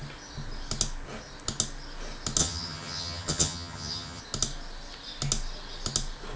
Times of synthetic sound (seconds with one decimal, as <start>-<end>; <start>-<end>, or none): 2.4-4.2